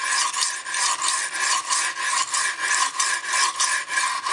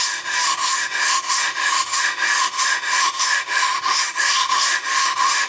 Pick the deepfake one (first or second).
second